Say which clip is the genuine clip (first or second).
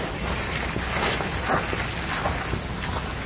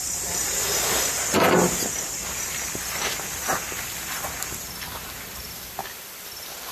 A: first